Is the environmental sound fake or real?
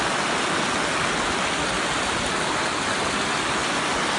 real